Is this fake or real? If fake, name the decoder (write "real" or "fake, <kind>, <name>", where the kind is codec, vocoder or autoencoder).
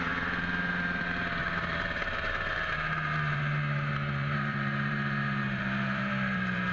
fake, vocoder, BigVGAN v2